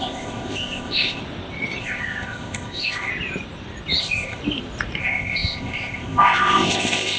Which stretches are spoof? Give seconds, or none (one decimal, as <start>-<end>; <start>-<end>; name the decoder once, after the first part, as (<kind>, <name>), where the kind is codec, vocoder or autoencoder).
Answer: 0.0-1.2 (codec, ZipCodec); 1.8-3.1; 4.0-4.4; 5.0-7.2